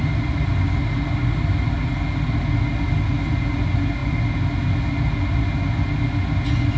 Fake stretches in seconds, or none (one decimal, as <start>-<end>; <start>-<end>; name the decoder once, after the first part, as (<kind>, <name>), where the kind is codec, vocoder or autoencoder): none

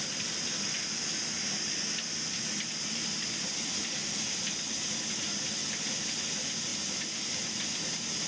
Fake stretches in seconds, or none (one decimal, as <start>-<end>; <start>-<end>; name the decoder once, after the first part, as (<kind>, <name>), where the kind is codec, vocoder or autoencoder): none

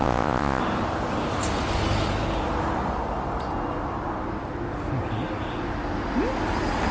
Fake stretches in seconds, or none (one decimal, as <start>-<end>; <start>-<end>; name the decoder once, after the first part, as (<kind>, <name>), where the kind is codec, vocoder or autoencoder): 0.0-0.6 (vocoder, Vocos)

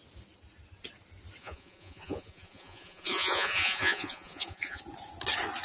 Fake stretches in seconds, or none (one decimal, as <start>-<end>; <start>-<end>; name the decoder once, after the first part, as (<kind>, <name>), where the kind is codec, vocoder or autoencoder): 1.4-4.8 (vocoder, Vocos)

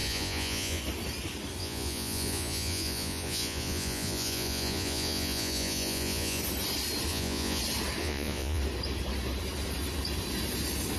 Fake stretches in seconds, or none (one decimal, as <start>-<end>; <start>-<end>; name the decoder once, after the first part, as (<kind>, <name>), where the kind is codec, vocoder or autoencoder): 0.0-0.8 (vocoder, Vocos); 1.6-6.4; 7.1-7.6; 8.0-8.6

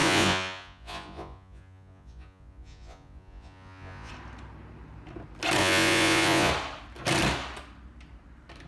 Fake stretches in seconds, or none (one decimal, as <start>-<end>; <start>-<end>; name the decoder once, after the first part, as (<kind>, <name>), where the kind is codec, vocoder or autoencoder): 0.0-4.1 (vocoder, Vocos); 5.6-6.5